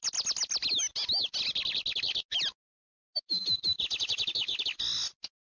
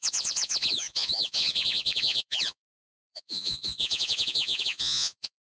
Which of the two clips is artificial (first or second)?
second